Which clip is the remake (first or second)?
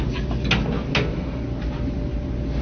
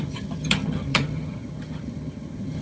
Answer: second